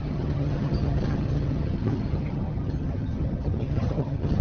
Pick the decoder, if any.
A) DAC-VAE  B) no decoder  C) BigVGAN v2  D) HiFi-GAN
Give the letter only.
D